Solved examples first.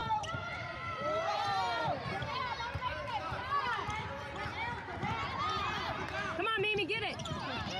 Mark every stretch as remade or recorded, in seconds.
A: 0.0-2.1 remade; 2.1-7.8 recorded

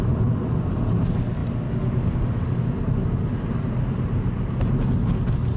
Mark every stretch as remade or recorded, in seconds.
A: 0.0-5.6 recorded

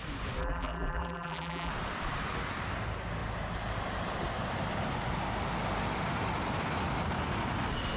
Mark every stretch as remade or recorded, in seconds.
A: 0.0-0.4 recorded; 0.4-1.7 remade; 1.7-8.0 recorded

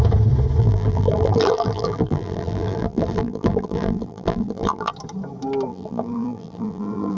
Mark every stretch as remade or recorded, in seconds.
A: 0.0-0.6 recorded; 0.6-4.9 remade; 4.9-5.7 recorded; 5.7-7.2 remade

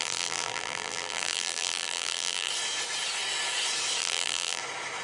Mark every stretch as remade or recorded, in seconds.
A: 0.0-2.5 remade; 2.5-4.0 recorded; 4.0-4.6 remade; 4.6-5.0 recorded

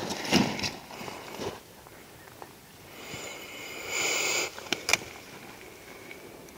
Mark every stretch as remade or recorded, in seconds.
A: 0.0-1.2 recorded; 1.2-1.9 remade; 1.9-3.2 recorded; 3.2-4.9 remade; 4.9-6.0 recorded; 6.0-6.6 remade

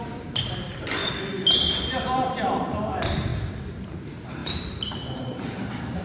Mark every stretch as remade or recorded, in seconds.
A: 0.0-1.0 remade; 1.0-2.3 recorded; 2.3-3.3 remade; 3.3-4.0 recorded; 4.0-6.0 remade

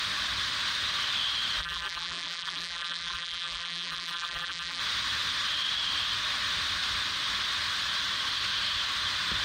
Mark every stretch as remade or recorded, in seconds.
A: 0.0-1.6 recorded; 1.6-4.8 remade; 4.8-9.4 recorded